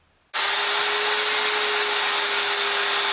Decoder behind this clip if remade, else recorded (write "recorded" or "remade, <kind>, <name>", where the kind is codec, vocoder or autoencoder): recorded